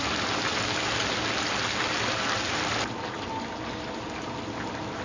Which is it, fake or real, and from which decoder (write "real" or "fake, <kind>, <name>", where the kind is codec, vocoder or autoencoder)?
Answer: real